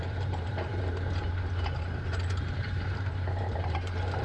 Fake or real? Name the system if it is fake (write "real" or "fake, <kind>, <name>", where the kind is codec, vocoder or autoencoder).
fake, vocoder, BigVGAN v2